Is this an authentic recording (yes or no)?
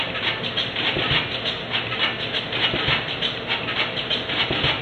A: yes